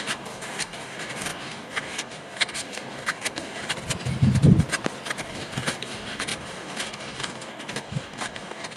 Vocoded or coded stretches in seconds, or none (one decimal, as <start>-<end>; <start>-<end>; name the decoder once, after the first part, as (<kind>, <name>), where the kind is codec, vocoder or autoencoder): 0.0-3.6 (codec, DAC); 5.2-8.8